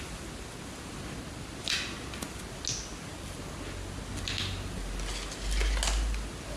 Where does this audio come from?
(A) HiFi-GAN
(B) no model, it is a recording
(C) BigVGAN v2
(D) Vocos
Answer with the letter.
B